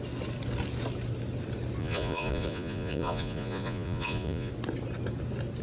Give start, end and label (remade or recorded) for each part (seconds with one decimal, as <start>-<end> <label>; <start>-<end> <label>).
0.0-1.8 recorded; 1.8-4.5 remade; 4.5-5.6 recorded